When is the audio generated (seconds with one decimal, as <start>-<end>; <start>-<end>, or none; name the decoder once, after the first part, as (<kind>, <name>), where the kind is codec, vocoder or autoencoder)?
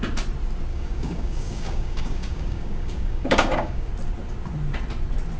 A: 0.7-3.9 (codec, DAC)